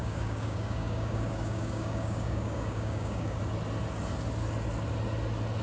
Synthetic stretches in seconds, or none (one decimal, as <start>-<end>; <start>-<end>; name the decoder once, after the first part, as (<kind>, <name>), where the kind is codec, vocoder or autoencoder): 0.0-3.4 (codec, DAC)